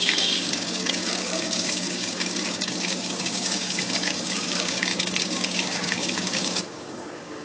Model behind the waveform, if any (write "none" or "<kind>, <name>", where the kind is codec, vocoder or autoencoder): codec, DAC